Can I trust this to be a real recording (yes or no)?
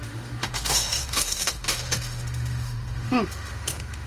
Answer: no